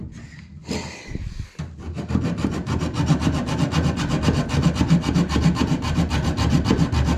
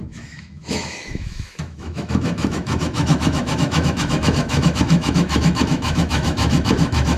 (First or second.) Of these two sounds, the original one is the first